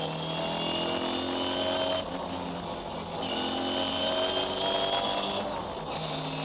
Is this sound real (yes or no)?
yes